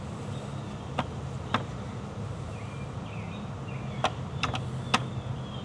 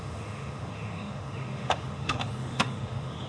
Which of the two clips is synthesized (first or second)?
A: second